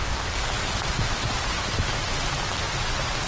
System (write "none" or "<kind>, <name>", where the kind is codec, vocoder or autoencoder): none